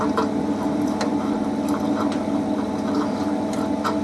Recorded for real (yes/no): yes